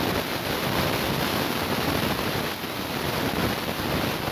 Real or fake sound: real